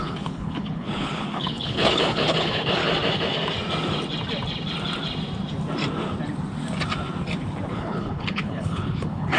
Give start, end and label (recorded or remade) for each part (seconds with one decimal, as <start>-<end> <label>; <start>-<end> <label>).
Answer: 0.0-2.8 remade; 2.8-7.7 recorded; 7.7-9.4 remade